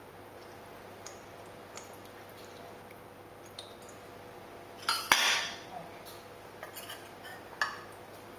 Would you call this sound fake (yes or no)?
no